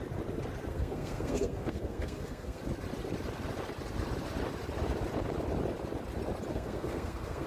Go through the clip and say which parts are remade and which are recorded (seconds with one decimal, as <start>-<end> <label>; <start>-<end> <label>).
0.0-0.7 recorded; 0.7-2.6 remade; 2.6-6.5 recorded; 6.5-7.5 remade